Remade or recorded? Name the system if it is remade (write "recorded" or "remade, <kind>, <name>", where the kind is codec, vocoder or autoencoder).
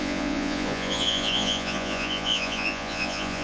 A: remade, vocoder, Vocos